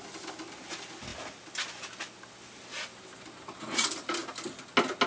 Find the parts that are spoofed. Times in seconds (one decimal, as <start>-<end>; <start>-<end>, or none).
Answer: none